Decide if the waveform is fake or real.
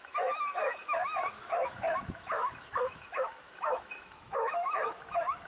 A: fake